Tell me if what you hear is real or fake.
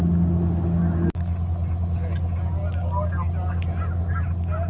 real